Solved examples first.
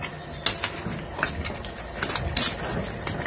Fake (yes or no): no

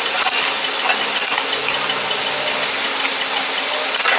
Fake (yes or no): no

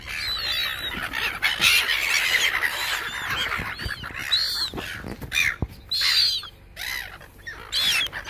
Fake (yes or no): no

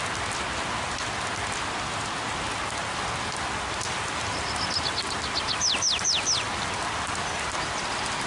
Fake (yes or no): no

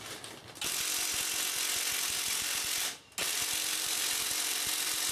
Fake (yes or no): no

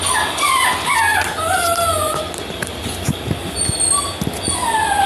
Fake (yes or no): no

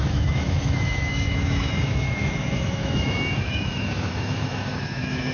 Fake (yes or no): yes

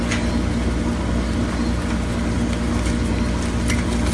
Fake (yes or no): no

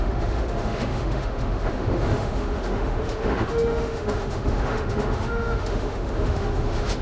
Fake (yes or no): yes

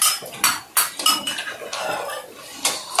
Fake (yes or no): no